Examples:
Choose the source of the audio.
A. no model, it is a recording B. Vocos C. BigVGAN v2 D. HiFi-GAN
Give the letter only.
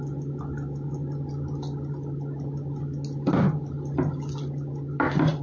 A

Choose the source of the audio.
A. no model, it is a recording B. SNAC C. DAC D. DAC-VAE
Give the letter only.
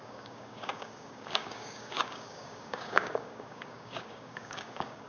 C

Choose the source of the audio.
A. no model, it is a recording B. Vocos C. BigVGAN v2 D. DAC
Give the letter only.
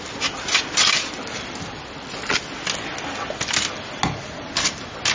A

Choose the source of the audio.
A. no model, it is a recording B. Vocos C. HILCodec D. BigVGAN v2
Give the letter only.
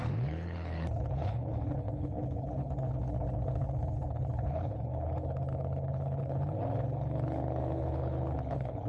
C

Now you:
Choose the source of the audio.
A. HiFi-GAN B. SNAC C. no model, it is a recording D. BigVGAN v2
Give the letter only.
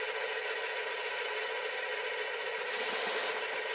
D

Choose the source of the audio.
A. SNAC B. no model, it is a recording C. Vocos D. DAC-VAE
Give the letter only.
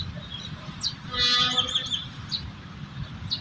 B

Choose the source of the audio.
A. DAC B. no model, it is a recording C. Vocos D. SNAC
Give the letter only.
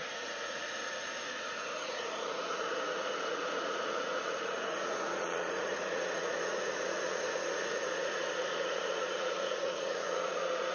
C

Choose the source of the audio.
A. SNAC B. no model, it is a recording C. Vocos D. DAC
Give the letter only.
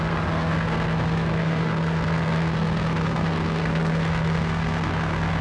A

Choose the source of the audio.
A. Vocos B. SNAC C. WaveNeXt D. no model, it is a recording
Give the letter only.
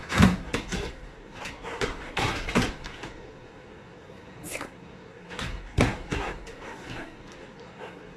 B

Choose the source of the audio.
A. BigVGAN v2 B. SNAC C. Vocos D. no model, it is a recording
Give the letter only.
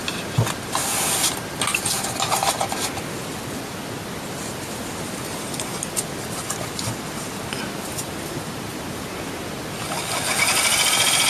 D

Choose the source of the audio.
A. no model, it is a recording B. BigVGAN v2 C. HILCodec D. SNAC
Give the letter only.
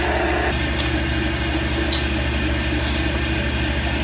A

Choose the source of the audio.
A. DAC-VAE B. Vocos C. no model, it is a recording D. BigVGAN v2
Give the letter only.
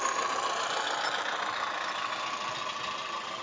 C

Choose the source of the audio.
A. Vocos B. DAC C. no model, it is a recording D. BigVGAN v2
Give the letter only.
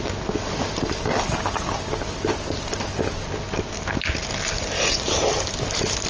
C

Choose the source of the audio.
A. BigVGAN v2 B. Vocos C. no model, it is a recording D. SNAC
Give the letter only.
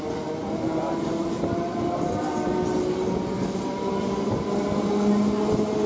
C